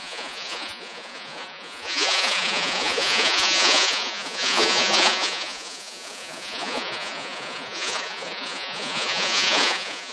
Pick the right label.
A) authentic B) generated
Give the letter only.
B